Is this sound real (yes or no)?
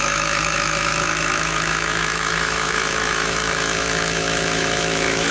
no